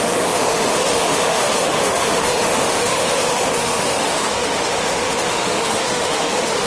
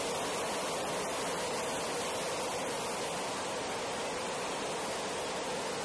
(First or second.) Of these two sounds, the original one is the second